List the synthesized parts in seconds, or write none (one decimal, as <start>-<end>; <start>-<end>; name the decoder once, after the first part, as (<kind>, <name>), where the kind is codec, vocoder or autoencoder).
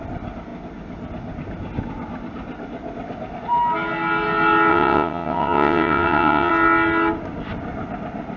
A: 4.7-6.5 (vocoder, WaveNeXt)